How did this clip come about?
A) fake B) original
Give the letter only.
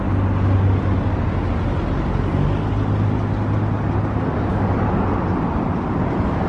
B